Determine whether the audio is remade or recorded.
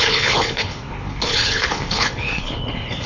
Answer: remade